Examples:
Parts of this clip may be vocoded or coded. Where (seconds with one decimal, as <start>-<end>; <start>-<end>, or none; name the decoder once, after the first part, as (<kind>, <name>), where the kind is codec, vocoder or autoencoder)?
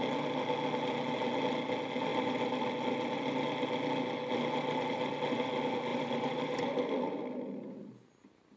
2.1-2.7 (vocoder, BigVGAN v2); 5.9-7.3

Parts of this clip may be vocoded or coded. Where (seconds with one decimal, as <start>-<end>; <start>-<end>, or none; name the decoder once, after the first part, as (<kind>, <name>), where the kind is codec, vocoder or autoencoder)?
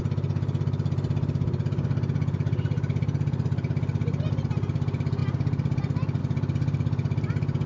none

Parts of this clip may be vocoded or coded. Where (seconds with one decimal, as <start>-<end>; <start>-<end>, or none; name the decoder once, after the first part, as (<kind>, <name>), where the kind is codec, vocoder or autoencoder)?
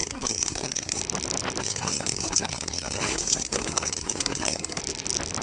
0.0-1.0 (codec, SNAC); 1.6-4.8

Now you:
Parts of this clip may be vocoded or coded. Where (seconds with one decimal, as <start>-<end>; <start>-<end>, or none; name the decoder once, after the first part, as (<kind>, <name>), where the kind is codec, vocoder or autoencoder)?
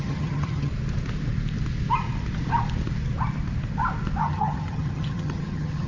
0.0-0.7 (vocoder, HiFi-GAN); 4.2-5.9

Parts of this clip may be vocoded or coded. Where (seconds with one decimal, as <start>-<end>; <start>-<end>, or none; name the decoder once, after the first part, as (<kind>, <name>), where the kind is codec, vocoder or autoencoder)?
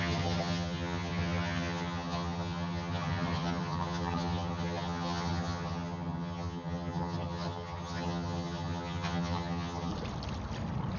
0.0-9.9 (vocoder, HiFi-GAN)